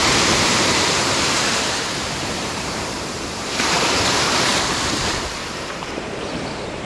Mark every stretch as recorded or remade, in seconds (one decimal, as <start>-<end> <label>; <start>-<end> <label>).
0.0-4.5 remade; 4.5-5.9 recorded; 5.9-6.9 remade